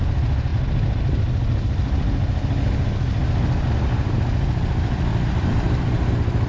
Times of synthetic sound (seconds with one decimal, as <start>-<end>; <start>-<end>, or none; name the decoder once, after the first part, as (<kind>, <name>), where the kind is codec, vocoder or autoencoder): 5.1-6.1 (vocoder, BigVGAN v2)